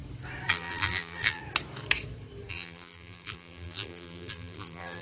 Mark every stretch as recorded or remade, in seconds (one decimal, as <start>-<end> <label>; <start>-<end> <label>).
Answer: 0.0-0.5 recorded; 0.5-1.4 remade; 1.4-2.5 recorded; 2.5-5.0 remade